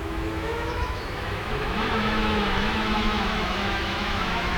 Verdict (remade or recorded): remade